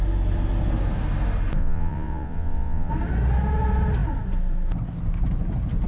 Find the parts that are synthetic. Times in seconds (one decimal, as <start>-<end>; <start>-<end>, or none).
1.6-2.9